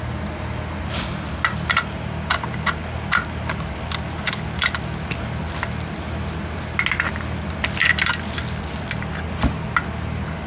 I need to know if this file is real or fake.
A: real